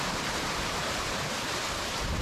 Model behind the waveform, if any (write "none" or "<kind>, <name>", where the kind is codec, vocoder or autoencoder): vocoder, BigVGAN v2